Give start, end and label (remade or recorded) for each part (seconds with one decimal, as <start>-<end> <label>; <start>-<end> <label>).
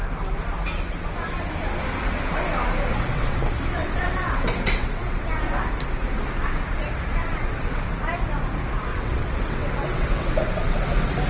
0.0-2.9 recorded; 2.9-3.4 remade; 3.4-3.8 recorded; 3.8-5.3 remade; 5.3-7.2 recorded; 7.2-7.8 remade; 7.8-8.9 recorded; 8.9-10.9 remade; 10.9-11.3 recorded